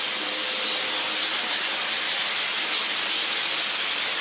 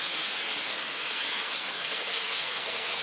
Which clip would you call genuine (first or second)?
first